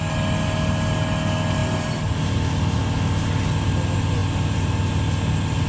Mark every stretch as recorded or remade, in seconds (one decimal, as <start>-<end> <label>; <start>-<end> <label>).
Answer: 0.0-1.6 recorded; 1.6-2.2 remade; 2.2-5.7 recorded